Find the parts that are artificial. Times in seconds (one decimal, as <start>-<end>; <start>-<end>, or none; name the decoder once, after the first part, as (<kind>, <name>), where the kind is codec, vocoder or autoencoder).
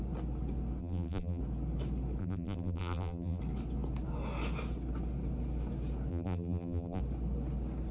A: 0.8-1.4 (vocoder, BigVGAN v2); 2.2-3.4; 6.1-7.0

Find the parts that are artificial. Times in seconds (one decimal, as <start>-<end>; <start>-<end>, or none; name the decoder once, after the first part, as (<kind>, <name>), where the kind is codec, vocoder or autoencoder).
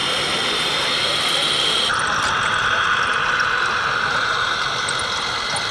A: 0.0-0.9 (vocoder, BigVGAN v2); 1.9-5.3